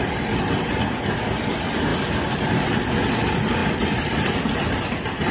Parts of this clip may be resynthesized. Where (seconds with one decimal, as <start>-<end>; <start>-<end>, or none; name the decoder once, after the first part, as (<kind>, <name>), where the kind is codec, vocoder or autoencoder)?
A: 1.9-2.7 (vocoder, BigVGAN v2); 3.6-4.7